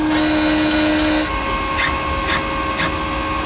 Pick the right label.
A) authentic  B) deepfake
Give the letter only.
A